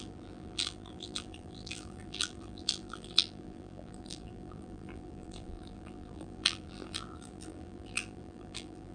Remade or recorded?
remade